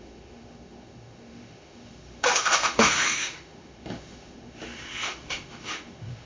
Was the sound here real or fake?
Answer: fake